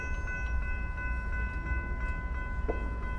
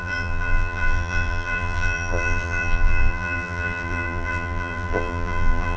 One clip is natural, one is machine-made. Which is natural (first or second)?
first